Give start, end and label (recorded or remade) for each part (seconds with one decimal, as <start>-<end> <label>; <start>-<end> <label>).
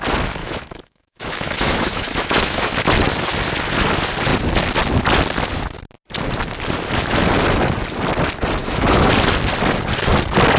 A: 0.0-0.4 recorded; 0.4-2.7 remade; 2.7-8.6 recorded; 8.6-9.1 remade; 9.1-10.6 recorded